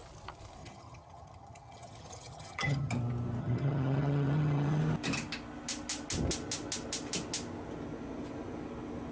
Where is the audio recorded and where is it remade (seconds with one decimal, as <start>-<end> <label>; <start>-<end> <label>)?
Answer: 0.0-0.6 recorded; 0.6-2.9 remade; 2.9-3.4 recorded; 3.4-4.8 remade; 4.8-9.1 recorded